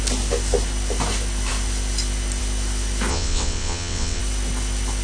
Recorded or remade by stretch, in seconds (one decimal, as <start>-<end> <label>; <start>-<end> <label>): 0.0-3.1 recorded; 3.1-4.2 remade; 4.2-5.0 recorded